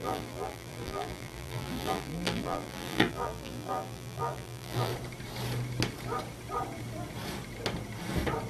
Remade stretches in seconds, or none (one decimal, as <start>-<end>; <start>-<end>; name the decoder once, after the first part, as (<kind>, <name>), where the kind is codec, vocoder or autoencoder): 0.0-4.9 (vocoder, BigVGAN v2)